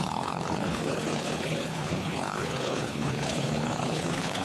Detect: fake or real fake